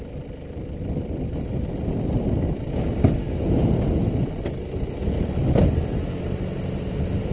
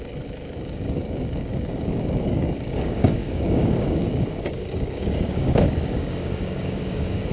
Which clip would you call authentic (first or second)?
first